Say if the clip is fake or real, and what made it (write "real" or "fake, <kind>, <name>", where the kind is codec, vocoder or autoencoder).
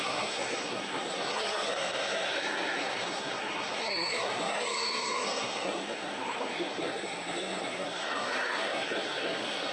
fake, codec, SNAC